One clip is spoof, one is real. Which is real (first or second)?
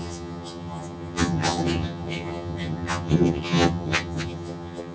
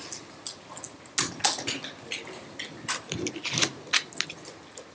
second